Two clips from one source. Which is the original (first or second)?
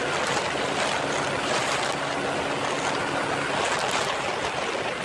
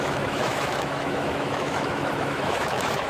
first